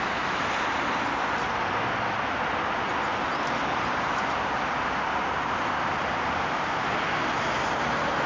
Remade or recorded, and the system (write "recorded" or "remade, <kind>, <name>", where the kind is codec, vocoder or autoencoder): recorded